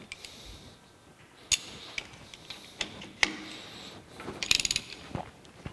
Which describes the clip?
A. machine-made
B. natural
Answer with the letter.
B